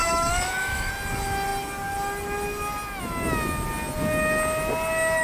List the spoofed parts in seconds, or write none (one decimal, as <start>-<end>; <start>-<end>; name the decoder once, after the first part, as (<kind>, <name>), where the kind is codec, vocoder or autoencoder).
0.0-0.9 (autoencoder, DAC-VAE)